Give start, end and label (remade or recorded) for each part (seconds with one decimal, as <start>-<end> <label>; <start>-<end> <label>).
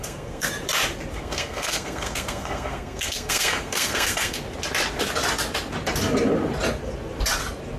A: 0.0-0.5 remade; 0.5-1.1 recorded; 1.1-4.4 remade; 4.4-7.8 recorded